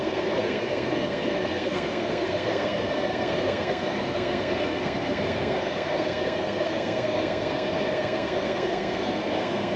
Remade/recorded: remade